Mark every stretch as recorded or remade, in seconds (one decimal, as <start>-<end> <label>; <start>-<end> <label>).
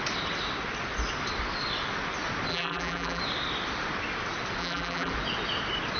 0.0-2.5 recorded; 2.5-3.2 remade; 3.2-4.6 recorded; 4.6-5.1 remade; 5.1-6.0 recorded